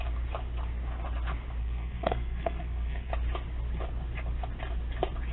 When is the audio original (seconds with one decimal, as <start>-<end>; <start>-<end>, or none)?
0.0-1.6; 3.1-5.3